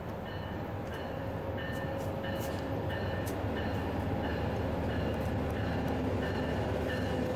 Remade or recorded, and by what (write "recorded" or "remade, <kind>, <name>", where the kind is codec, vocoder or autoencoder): recorded